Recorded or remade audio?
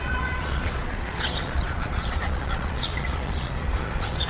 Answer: remade